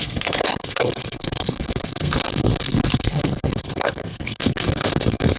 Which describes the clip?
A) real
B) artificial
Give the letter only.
B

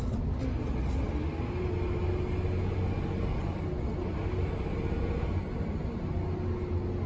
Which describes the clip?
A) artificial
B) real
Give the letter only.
B